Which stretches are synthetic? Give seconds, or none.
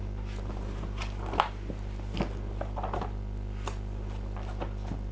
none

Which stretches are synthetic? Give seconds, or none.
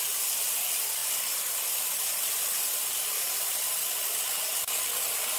none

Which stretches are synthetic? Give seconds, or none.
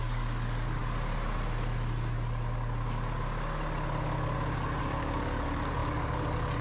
0.0-0.8 (codec, DAC); 4.8-6.6